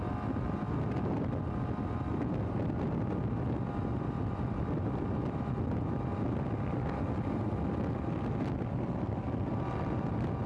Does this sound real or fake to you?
real